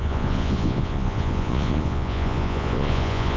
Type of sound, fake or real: fake